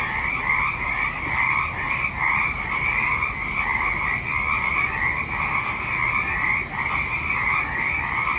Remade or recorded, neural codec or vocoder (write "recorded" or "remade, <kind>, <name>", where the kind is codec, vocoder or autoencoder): recorded